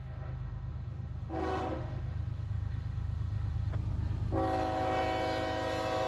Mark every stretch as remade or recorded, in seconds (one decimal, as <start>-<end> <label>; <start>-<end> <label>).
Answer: 0.0-3.7 remade; 3.7-6.1 recorded